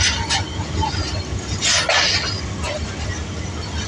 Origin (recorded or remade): recorded